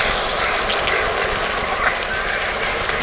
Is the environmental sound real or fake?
real